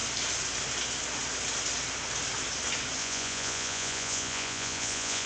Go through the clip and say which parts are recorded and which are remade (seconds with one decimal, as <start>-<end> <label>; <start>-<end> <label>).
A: 0.0-3.0 recorded; 3.0-5.3 remade